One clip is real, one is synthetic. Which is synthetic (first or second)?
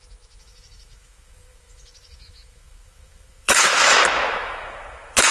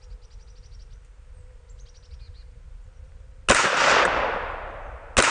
first